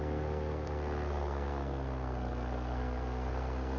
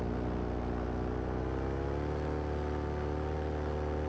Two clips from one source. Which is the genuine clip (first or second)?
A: second